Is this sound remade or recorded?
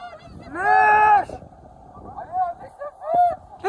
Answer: recorded